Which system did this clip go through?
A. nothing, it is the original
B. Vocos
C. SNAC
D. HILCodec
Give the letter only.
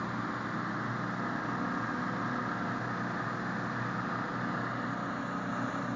A